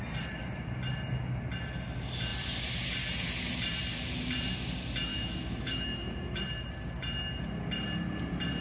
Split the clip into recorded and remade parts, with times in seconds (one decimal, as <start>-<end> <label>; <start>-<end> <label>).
0.0-5.1 recorded; 5.1-6.4 remade; 6.4-8.6 recorded